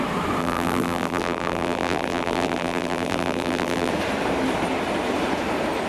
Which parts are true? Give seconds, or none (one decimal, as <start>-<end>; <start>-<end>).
0.0-0.4; 3.9-5.9